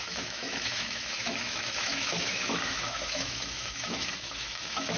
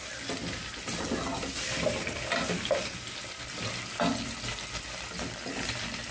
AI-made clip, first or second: first